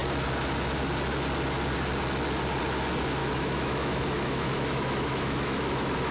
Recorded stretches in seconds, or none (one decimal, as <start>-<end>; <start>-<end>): 0.0-3.2